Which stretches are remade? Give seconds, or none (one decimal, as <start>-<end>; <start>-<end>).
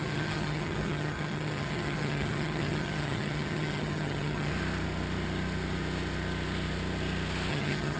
0.0-4.5; 7.5-8.0